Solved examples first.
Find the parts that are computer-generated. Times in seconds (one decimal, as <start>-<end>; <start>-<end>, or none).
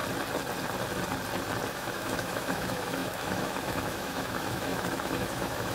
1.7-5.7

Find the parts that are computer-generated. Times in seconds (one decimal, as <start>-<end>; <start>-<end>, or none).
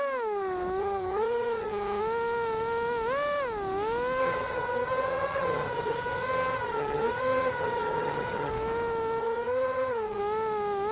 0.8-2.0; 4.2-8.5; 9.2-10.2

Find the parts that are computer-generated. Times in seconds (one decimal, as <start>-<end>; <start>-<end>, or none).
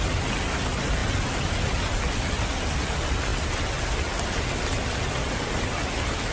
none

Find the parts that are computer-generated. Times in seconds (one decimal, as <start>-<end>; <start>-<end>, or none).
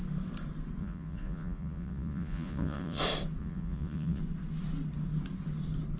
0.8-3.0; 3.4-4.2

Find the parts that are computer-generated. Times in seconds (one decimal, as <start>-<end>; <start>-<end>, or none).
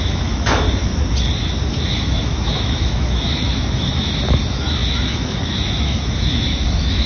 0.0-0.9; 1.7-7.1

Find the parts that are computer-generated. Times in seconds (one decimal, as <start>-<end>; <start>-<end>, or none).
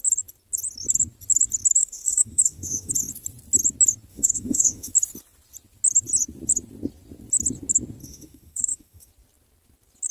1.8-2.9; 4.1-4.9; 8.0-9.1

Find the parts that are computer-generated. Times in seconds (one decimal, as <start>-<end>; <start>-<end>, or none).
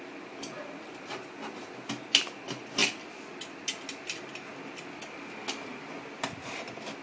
none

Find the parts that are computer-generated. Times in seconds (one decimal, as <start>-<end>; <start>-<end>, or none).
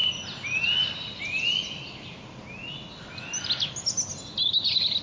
none